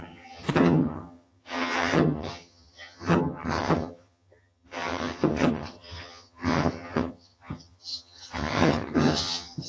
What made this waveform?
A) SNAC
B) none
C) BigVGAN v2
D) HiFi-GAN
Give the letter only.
D